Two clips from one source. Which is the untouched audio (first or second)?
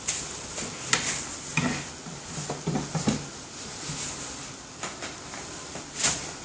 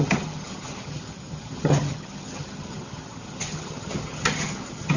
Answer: first